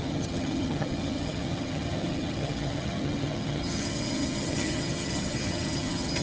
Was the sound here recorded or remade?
remade